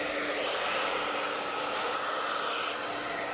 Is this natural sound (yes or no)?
yes